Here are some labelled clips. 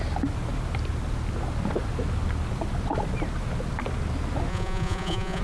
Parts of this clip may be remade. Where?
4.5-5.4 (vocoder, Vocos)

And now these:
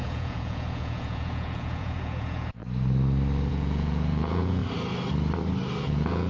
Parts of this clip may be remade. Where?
0.0-2.6 (vocoder, Vocos); 3.5-4.6; 5.8-6.3